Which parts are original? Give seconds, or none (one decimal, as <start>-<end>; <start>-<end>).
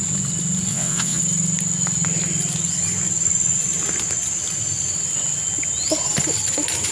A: 0.0-0.7; 1.2-6.9